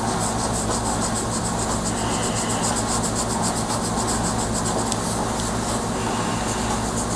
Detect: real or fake real